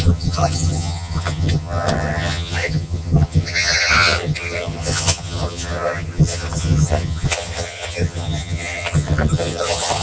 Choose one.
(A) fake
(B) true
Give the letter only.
A